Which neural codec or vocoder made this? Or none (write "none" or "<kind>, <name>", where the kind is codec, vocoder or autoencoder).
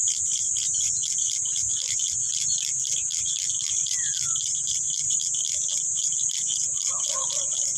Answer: none